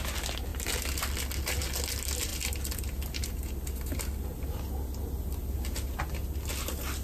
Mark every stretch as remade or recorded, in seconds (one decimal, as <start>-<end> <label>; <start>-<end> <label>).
0.0-7.0 recorded